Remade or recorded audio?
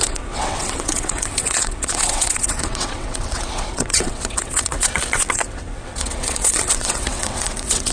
remade